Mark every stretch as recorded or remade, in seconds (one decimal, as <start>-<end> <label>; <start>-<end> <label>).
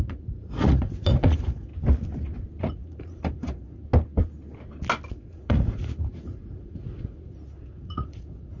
0.0-1.7 remade; 1.7-2.6 recorded; 2.6-3.8 remade; 3.8-5.1 recorded; 5.1-8.6 remade